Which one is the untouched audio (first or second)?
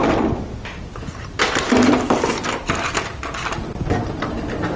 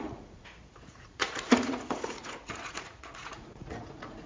first